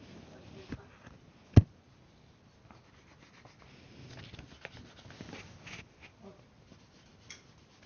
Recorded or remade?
recorded